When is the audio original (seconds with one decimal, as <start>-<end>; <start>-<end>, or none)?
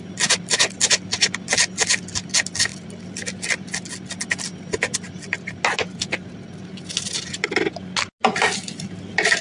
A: 0.0-9.4